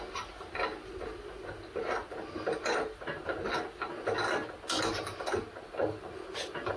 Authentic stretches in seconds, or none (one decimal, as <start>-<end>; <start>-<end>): 0.0-6.8

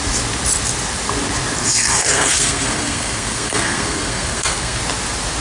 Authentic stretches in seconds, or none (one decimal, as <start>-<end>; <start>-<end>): 0.0-1.6; 4.8-5.4

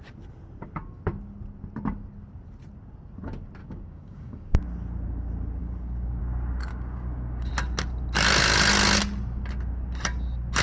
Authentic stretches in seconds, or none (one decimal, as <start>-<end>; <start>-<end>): 0.0-3.6; 4.6-5.6; 6.2-6.7; 7.5-10.6

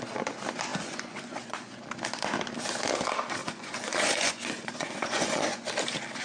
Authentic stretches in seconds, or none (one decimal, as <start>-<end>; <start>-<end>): 0.0-0.7; 1.8-3.4; 5.7-6.2

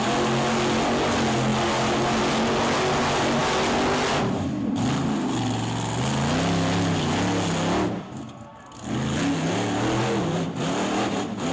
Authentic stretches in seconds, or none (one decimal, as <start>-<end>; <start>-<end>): 0.0-11.5

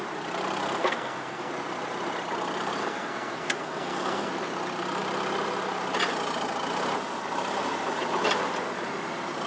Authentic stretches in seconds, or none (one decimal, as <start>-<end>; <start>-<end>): 0.0-0.8; 1.5-2.8; 4.3-9.5

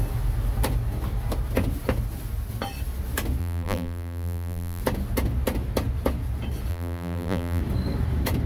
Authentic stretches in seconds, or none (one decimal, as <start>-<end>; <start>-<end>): 0.0-3.4; 4.8-6.7; 7.6-8.5